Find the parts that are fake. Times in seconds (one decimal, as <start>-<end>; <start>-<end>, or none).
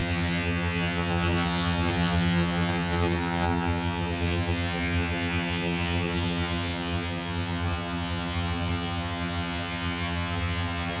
0.0-11.0